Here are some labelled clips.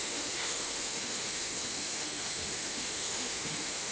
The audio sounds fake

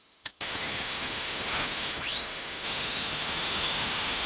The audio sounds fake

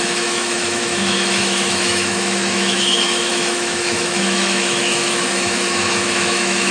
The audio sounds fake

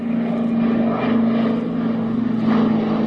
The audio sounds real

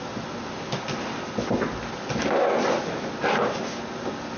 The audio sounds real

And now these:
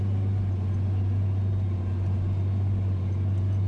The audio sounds real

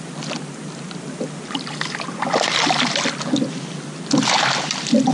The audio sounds real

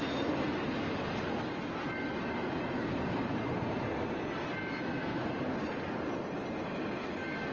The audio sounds real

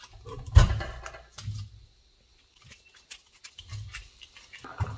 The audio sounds real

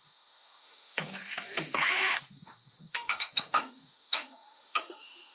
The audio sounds fake